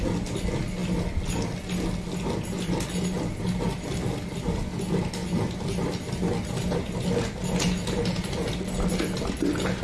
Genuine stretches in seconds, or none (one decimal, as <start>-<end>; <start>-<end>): 0.0-9.8